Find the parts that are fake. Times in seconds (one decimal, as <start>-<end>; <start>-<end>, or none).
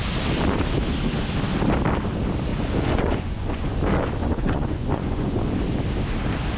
2.5-3.8; 4.2-5.6